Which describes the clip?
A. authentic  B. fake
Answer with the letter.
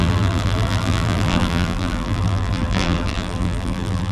B